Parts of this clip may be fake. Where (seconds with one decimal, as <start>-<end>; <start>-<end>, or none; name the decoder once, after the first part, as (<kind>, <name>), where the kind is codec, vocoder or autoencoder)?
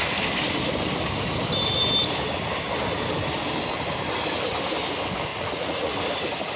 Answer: 5.3-5.9 (vocoder, Vocos)